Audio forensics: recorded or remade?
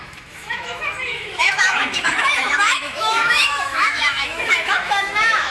remade